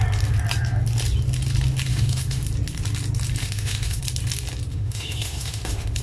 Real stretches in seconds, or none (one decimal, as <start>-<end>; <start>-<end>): 0.0-1.9; 2.4-3.4; 4.0-4.7

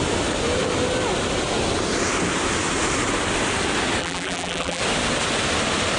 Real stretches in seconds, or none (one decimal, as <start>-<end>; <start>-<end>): 0.0-4.0; 4.8-6.0

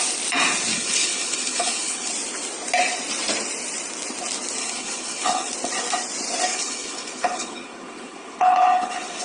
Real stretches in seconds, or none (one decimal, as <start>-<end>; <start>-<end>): 0.0-0.7; 2.1-4.6; 5.5-6.5